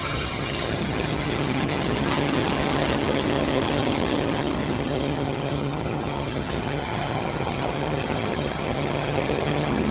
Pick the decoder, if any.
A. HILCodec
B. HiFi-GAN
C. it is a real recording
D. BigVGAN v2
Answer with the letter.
B